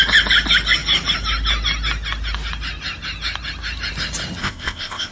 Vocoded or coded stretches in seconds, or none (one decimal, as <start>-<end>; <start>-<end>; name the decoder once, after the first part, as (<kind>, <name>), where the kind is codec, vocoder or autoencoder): 4.4-5.1 (codec, ZipCodec)